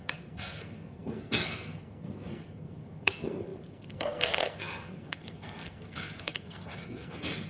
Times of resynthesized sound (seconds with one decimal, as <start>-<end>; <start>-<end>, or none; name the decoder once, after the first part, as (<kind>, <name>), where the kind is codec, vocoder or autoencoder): 0.0-7.5 (codec, SNAC)